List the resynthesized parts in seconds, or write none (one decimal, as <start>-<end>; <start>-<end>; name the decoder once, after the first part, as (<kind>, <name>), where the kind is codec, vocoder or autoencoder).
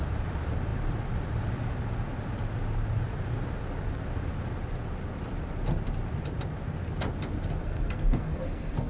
7.6-8.9 (codec, SNAC)